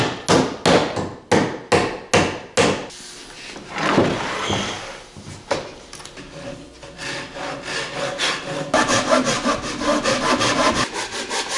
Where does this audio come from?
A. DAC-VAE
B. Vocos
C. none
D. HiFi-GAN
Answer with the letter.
C